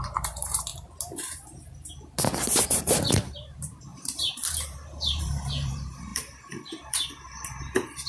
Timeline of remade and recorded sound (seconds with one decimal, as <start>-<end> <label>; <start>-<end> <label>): 0.0-0.7 remade; 0.7-3.1 recorded; 3.1-8.1 remade